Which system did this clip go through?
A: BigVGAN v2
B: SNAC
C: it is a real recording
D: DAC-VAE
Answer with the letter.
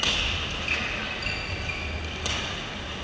C